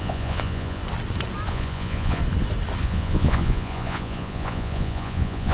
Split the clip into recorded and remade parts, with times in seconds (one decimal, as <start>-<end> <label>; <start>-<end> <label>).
0.0-0.8 remade; 0.8-1.5 recorded; 1.5-2.2 remade; 2.2-2.8 recorded; 2.8-5.5 remade